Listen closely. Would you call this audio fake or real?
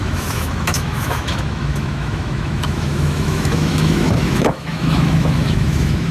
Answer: fake